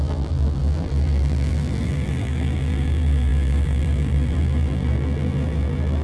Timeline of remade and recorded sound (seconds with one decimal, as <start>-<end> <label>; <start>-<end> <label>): 0.0-6.0 remade